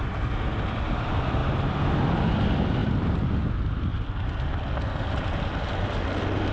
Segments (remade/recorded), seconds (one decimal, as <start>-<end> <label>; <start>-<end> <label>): 0.0-6.5 recorded

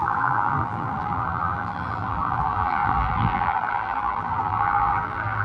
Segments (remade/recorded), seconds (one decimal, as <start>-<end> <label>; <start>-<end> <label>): 0.0-5.4 remade